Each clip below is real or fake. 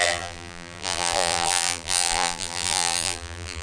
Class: fake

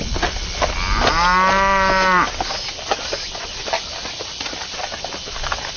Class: real